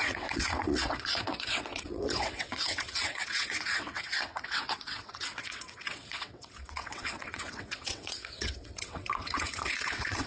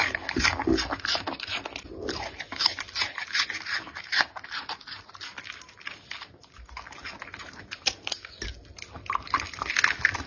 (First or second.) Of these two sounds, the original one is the second